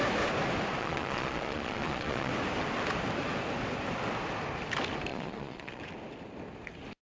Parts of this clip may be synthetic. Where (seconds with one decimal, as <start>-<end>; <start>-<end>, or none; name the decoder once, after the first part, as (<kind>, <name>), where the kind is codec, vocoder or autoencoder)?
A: 0.8-2.3 (vocoder, Vocos); 5.1-5.8